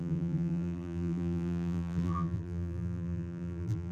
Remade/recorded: remade